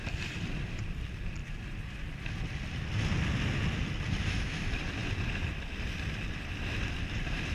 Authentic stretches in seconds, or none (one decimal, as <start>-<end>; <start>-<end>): 0.0-0.6